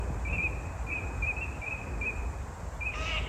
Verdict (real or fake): real